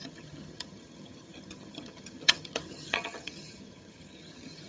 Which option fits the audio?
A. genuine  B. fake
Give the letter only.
B